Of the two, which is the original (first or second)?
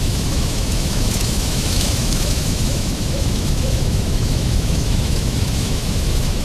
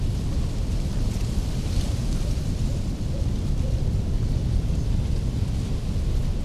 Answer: second